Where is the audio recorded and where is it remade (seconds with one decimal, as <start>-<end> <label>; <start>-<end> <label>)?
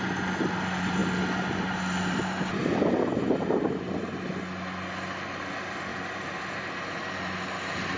0.0-5.9 recorded; 5.9-6.7 remade; 6.7-8.0 recorded